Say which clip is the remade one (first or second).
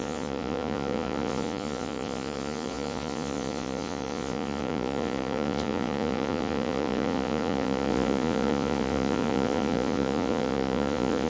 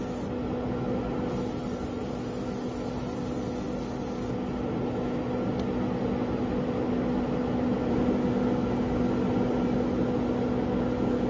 first